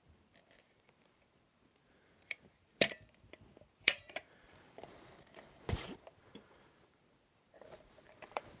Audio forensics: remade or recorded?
remade